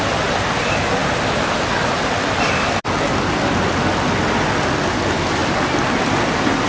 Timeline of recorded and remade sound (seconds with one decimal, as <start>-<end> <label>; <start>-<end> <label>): 0.0-6.7 recorded